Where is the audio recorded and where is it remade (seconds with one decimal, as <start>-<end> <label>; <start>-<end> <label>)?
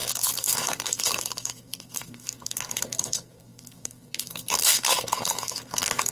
0.0-6.1 remade